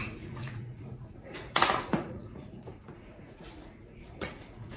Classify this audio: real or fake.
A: fake